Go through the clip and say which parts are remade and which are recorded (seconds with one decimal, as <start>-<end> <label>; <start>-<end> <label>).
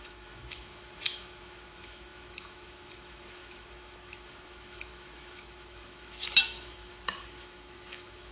0.0-8.3 remade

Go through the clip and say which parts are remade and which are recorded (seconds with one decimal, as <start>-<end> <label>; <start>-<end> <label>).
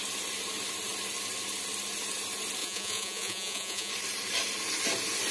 0.0-2.6 recorded; 2.6-3.9 remade; 3.9-5.3 recorded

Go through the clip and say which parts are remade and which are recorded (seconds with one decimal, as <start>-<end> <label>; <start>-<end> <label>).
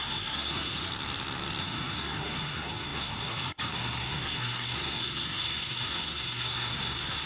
0.0-0.9 remade; 0.9-1.6 recorded; 1.6-7.3 remade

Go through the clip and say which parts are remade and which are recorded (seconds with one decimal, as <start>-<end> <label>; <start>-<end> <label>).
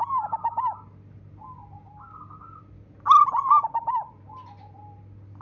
0.0-5.4 recorded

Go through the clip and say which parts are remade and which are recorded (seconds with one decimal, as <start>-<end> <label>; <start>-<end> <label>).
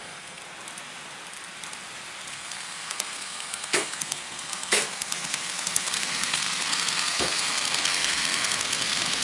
0.0-0.4 remade; 0.4-2.3 recorded; 2.3-9.2 remade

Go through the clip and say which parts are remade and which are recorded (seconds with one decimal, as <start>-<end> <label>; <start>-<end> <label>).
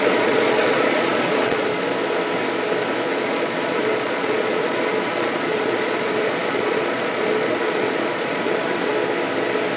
0.0-1.7 remade; 1.7-3.2 recorded; 3.2-8.9 remade; 8.9-9.8 recorded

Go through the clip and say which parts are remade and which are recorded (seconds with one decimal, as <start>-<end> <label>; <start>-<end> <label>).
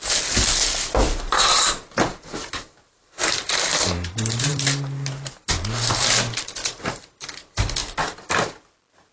0.0-2.1 recorded; 2.1-5.5 remade; 5.5-6.6 recorded; 6.6-7.2 remade; 7.2-9.1 recorded